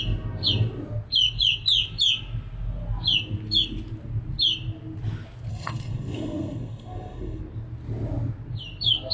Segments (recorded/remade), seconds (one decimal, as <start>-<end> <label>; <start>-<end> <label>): 0.0-5.5 recorded; 5.5-7.4 remade; 7.4-9.1 recorded